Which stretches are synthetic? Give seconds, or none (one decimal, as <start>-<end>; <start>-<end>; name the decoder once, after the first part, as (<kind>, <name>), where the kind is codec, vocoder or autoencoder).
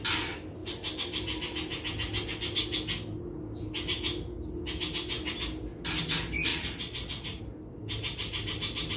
6.5-7.4 (vocoder, Vocos)